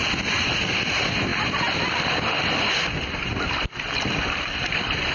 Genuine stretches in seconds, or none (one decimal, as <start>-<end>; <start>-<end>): 0.0-5.1